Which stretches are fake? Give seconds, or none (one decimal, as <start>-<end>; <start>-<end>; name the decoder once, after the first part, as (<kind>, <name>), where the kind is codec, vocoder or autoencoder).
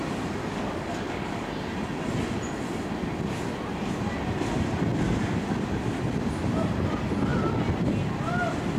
0.4-1.5 (codec, DAC)